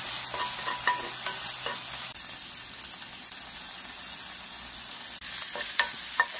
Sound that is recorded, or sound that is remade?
recorded